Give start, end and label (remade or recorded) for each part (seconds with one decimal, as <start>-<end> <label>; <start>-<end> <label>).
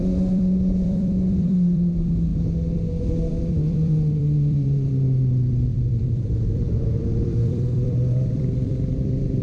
0.0-2.3 remade; 2.3-3.1 recorded; 3.1-9.4 remade